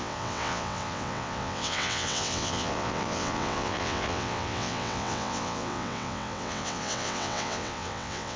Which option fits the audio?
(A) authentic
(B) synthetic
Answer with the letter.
B